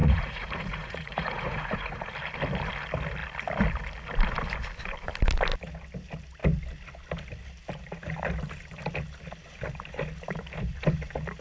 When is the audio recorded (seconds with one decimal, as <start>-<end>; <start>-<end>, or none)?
2.1-11.4